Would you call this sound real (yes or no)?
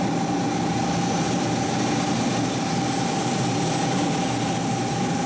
yes